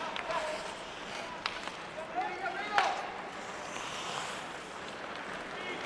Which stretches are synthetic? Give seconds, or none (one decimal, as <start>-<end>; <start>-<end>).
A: none